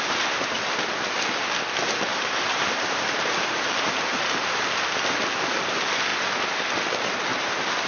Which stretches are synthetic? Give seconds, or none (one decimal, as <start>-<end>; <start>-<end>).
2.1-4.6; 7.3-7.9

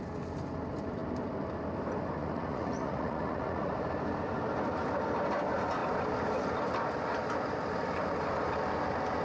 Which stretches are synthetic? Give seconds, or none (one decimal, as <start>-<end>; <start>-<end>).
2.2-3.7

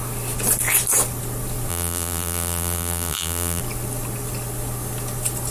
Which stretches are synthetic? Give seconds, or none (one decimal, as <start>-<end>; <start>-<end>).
1.7-3.6

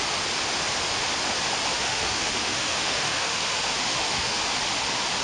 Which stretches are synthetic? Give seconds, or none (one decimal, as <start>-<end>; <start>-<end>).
1.7-4.4

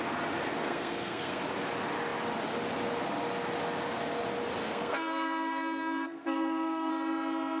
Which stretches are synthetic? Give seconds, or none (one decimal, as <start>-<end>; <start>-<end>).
0.6-1.4; 4.6-6.9

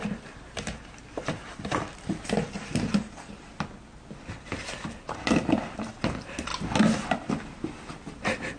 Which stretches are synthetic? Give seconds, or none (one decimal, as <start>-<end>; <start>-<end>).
none

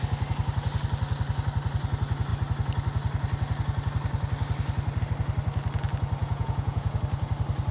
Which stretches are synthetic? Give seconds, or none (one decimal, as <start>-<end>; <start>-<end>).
6.2-7.0